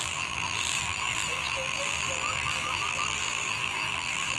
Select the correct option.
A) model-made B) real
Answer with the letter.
A